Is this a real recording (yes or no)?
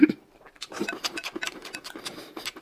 yes